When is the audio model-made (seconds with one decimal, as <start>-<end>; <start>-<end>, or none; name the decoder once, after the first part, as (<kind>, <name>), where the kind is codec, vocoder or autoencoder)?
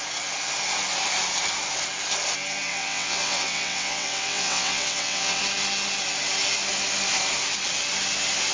2.7-5.4 (vocoder, WaveNeXt)